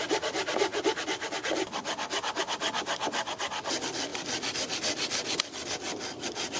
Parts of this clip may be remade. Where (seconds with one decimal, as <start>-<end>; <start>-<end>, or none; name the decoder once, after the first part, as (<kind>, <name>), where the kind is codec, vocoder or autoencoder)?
none